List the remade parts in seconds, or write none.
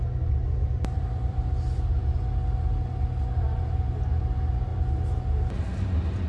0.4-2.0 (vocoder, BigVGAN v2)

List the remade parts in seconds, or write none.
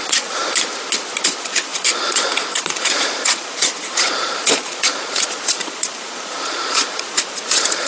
0.0-0.4 (vocoder, Vocos); 1.2-7.9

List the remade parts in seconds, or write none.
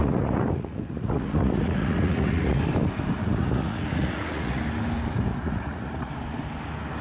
0.0-2.6 (vocoder, Vocos); 3.2-4.6; 5.3-6.1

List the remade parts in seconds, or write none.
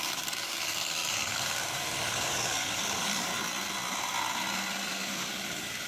0.0-3.3 (codec, DAC); 4.9-5.9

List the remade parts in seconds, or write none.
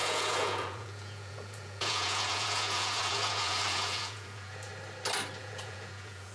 0.0-4.7 (vocoder, Vocos); 5.4-6.3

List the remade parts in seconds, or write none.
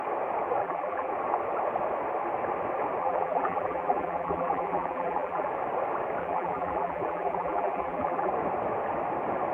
0.6-1.1 (vocoder, BigVGAN v2); 3.0-5.5; 6.2-8.3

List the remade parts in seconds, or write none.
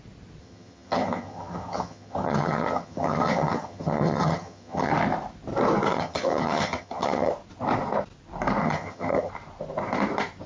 0.4-4.9 (vocoder, HiFi-GAN); 5.9-7.3; 8.6-9.3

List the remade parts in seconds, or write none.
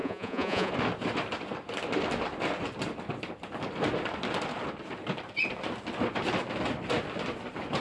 0.0-0.7 (vocoder, Vocos)